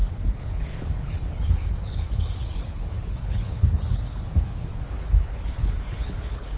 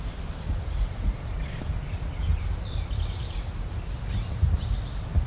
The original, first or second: second